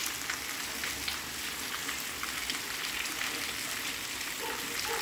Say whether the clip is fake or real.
real